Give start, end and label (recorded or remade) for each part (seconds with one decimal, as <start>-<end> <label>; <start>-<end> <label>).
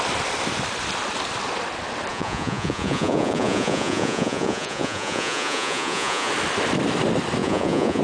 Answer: 0.0-2.1 recorded; 2.1-6.3 remade; 6.3-7.4 recorded; 7.4-8.0 remade